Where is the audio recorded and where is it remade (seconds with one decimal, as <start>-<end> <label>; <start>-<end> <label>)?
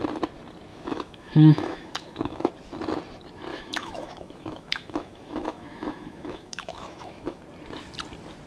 0.0-0.7 recorded; 0.7-2.5 remade; 2.5-3.5 recorded; 3.5-7.4 remade; 7.4-8.5 recorded